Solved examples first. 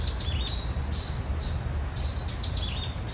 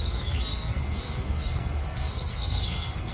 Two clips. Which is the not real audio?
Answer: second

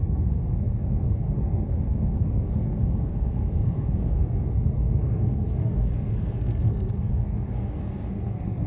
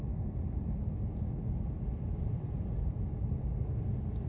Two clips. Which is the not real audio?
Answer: first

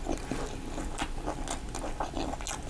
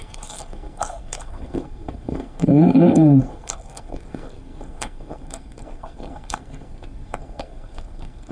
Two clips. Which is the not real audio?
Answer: second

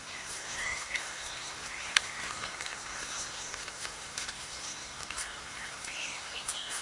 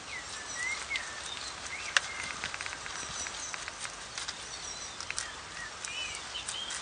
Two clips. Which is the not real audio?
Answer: first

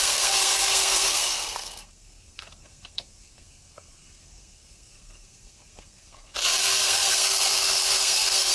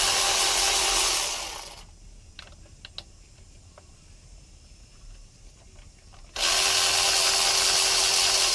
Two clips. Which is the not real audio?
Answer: first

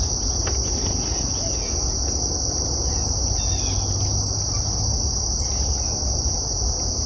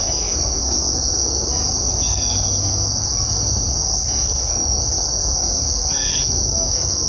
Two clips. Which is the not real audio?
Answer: second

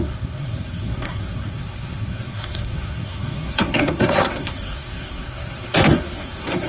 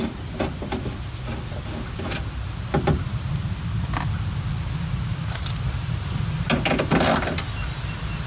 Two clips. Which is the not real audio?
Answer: first